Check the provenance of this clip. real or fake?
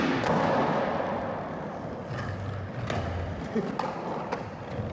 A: real